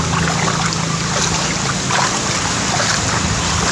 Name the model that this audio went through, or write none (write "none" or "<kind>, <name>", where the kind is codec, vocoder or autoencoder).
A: none